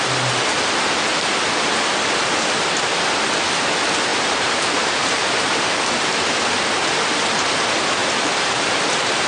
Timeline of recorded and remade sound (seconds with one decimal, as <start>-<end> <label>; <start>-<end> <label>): 0.0-1.1 recorded; 1.1-1.7 remade; 1.7-4.1 recorded; 4.1-5.3 remade; 5.3-8.0 recorded; 8.0-8.8 remade; 8.8-9.3 recorded